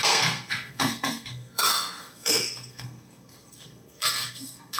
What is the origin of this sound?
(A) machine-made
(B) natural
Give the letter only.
A